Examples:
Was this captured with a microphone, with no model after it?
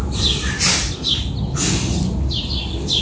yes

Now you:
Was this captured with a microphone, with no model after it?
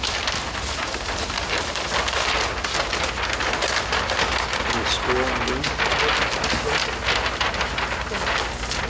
yes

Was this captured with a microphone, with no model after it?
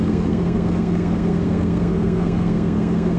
no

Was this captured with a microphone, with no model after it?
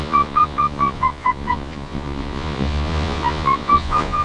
no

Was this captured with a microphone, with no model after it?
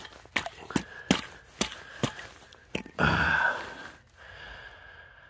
yes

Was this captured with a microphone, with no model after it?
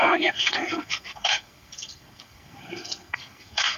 no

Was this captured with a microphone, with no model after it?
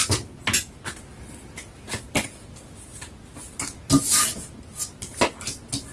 yes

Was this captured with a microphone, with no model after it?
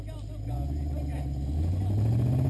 yes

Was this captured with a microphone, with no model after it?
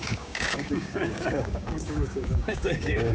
no